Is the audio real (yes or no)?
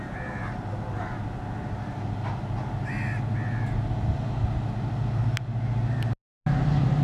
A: yes